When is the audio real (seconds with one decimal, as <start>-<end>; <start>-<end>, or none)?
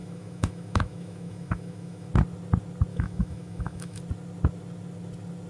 2.1-2.9; 4.0-5.5